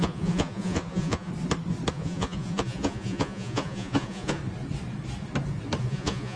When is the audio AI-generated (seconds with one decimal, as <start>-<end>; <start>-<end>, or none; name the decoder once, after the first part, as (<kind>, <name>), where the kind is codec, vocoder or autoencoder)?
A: 0.0-1.3 (vocoder, Vocos); 1.9-4.4; 5.8-6.4